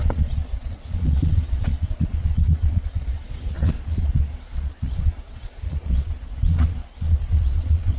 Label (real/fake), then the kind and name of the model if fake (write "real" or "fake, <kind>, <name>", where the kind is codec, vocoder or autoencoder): fake, vocoder, Vocos